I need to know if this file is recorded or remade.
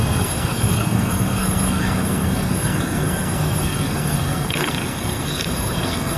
remade